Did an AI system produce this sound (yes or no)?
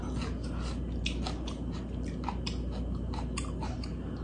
no